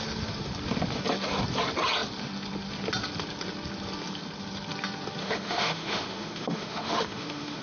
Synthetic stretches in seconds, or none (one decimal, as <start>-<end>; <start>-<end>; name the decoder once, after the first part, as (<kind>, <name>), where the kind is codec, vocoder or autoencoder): 5.2-7.6 (autoencoder, DAC-VAE)